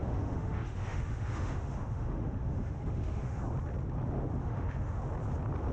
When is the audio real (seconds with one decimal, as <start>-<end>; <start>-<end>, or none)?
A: 3.4-4.4; 5.0-5.7